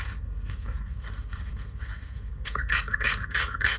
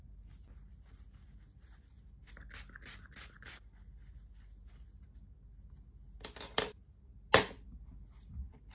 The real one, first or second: second